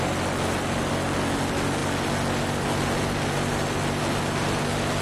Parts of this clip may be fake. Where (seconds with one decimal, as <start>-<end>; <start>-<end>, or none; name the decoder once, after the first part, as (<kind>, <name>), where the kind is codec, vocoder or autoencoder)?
none